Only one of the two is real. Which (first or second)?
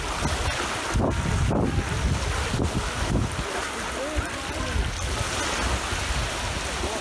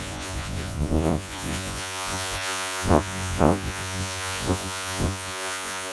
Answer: first